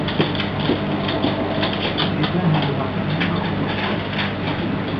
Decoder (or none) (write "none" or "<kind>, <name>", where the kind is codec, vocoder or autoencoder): none